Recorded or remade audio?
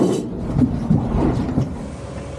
recorded